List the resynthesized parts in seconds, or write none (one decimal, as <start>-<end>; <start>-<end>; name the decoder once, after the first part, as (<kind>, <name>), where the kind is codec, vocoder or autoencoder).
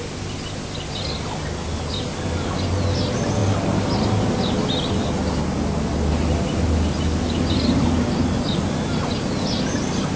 none